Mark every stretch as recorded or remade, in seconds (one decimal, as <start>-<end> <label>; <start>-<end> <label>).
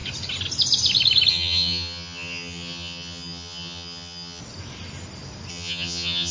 0.0-1.3 recorded; 1.3-4.4 remade; 4.4-5.5 recorded; 5.5-6.3 remade